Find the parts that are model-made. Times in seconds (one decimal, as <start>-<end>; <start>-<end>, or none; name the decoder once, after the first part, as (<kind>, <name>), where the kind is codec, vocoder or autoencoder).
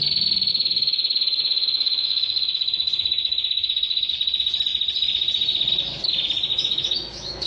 0.5-4.1 (autoencoder, DAC-VAE); 6.5-7.5